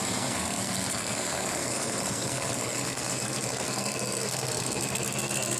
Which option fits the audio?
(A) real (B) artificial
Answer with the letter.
B